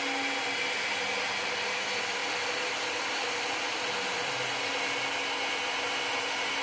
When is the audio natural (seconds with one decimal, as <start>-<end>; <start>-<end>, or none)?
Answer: 0.0-6.6